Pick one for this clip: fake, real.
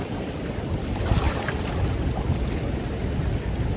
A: real